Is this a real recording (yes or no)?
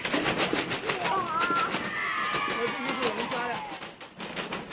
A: yes